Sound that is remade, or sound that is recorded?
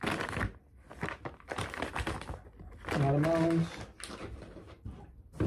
recorded